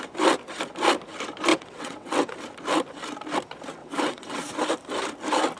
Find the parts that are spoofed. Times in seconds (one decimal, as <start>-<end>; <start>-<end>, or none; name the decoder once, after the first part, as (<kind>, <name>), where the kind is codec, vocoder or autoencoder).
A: 1.5-2.3 (vocoder, WaveNeXt); 3.8-4.5